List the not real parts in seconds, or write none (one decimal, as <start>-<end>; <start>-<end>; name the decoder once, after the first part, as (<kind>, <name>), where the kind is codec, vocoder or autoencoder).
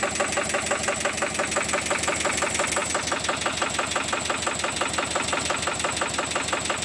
none